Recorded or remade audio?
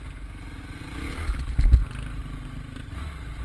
recorded